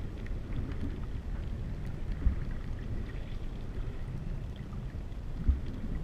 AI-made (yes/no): no